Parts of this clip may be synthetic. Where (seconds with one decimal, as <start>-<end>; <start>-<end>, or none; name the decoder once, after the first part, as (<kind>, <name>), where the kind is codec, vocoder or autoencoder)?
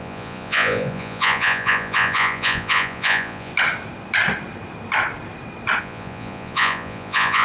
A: 0.0-3.5 (vocoder, Vocos); 5.8-7.4